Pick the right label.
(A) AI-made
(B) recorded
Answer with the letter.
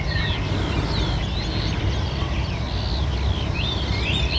B